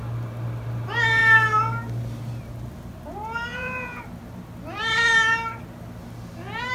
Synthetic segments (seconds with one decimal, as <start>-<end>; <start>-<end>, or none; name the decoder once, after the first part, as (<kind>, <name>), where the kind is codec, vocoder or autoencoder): 3.5-4.0 (vocoder, Vocos)